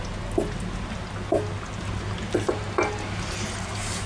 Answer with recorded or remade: recorded